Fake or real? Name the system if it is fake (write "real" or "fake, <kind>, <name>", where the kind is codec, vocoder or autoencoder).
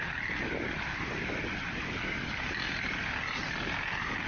real